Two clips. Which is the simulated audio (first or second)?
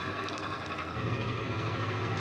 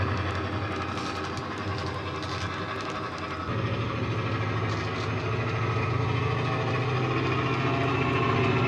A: first